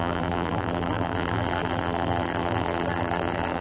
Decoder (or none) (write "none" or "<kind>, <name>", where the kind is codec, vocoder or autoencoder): vocoder, BigVGAN v2